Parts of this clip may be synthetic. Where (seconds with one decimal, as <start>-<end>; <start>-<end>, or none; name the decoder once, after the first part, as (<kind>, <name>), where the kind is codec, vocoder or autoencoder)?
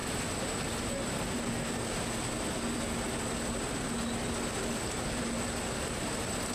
none